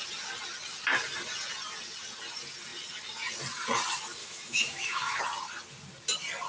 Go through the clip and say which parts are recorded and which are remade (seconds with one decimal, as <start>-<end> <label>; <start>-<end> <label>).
0.0-4.2 recorded; 4.2-5.2 remade; 5.2-6.5 recorded